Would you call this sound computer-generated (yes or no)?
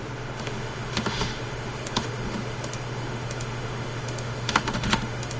yes